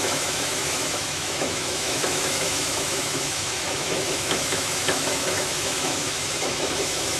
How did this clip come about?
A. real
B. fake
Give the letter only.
B